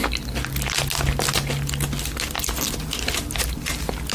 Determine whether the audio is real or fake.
real